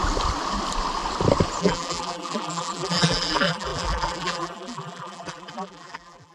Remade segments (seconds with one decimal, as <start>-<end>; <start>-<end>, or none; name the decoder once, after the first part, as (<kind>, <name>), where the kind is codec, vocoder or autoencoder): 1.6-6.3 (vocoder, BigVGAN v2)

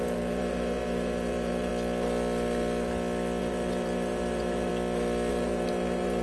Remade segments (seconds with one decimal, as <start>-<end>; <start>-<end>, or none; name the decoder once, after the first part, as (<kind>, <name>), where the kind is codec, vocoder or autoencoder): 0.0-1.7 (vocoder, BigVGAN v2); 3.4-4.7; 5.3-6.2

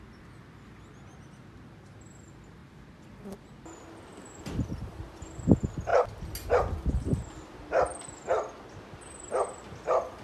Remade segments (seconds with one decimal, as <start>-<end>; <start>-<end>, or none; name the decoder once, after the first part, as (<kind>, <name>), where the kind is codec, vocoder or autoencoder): 4.1-5.0 (vocoder, BigVGAN v2)

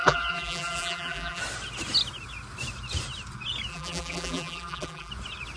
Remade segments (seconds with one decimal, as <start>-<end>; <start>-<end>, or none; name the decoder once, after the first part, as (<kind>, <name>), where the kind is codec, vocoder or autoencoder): 0.0-1.4 (vocoder, BigVGAN v2); 3.7-5.1

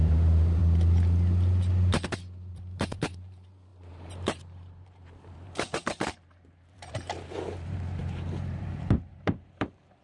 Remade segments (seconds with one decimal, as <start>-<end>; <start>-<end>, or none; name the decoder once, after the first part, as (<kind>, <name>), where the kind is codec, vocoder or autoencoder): 0.0-0.6 (vocoder, BigVGAN v2); 2.5-10.0